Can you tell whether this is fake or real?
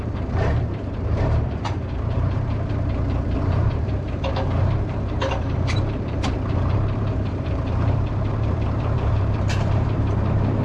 fake